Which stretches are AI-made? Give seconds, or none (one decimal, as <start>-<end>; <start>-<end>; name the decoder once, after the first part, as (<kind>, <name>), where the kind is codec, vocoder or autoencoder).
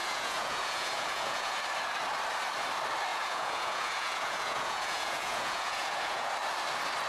0.0-1.6 (vocoder, Vocos); 3.1-6.3